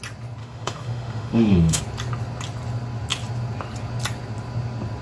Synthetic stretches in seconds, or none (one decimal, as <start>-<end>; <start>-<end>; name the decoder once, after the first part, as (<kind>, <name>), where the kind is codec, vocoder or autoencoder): 0.4-1.8 (autoencoder, DAC-VAE)